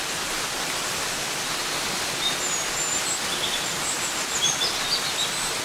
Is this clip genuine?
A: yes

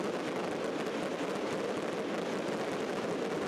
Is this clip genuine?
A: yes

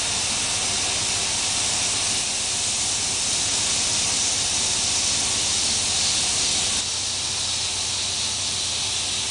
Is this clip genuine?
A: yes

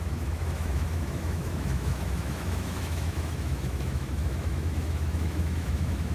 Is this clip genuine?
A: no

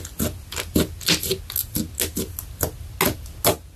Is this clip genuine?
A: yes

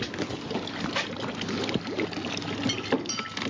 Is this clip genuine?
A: yes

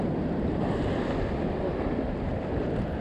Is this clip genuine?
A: yes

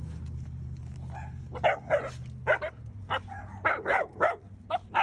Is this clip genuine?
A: yes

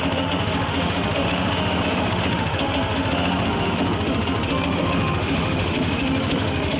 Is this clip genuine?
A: no